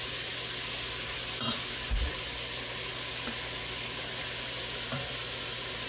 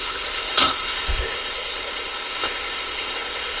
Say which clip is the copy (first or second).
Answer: second